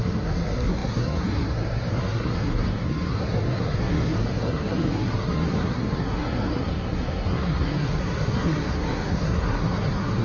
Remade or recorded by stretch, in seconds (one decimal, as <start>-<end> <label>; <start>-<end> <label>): 0.0-10.2 remade